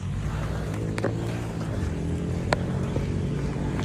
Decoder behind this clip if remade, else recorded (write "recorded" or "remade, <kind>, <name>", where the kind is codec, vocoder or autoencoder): recorded